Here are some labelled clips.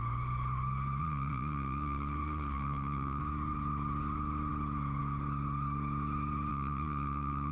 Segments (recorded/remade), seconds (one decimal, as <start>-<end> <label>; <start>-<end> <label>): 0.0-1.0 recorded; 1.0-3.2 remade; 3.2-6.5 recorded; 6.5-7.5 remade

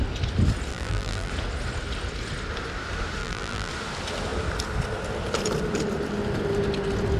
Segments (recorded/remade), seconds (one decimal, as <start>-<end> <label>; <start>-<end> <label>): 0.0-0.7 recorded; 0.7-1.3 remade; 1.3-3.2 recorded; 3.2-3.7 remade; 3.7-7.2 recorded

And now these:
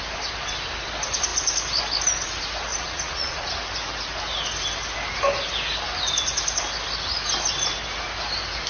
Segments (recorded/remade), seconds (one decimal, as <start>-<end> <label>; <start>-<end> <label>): 0.0-2.7 recorded; 2.7-3.5 remade; 3.5-8.7 recorded

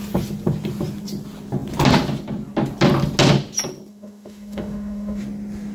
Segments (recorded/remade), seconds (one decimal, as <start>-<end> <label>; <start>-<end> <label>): 0.0-3.9 recorded; 3.9-5.2 remade; 5.2-5.7 recorded

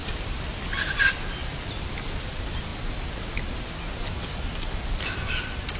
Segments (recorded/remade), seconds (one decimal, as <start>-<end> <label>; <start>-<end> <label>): 0.0-0.6 recorded; 0.6-2.7 remade; 2.7-4.7 recorded; 4.7-5.8 remade

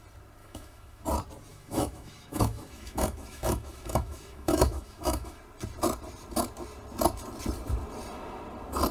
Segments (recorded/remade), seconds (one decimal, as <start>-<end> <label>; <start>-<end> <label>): 0.0-0.4 recorded; 0.4-1.0 remade; 1.0-1.5 recorded; 1.5-5.4 remade; 5.4-8.9 recorded